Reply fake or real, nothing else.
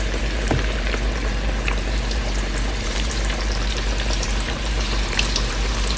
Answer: fake